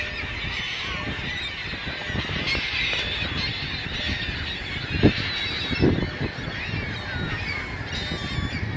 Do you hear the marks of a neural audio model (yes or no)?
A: no